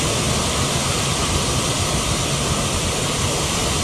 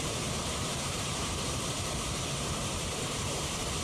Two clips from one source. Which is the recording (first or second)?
first